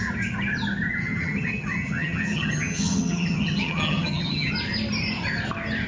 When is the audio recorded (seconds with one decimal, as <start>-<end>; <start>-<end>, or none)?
0.0-1.0; 4.5-5.9